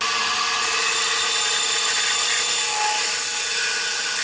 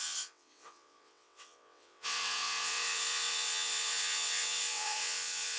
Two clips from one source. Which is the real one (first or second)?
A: first